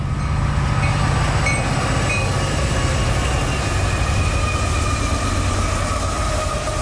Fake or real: real